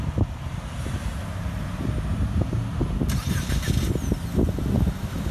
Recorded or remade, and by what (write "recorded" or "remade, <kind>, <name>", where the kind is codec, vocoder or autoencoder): recorded